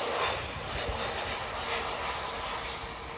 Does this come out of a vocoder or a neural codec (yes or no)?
no